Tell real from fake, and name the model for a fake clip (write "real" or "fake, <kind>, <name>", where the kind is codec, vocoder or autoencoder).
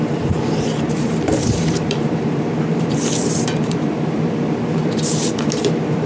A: fake, vocoder, BigVGAN v2